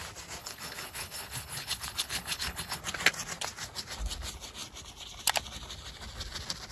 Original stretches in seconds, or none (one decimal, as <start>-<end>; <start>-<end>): 0.0-0.4; 2.8-6.7